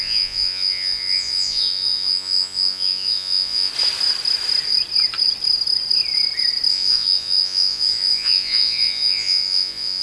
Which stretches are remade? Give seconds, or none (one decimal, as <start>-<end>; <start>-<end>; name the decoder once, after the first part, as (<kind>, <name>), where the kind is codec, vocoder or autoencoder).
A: 0.0-3.7 (vocoder, Vocos); 6.7-10.0